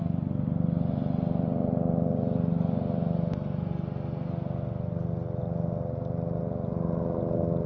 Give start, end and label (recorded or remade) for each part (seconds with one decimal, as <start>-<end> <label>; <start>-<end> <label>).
0.0-7.7 recorded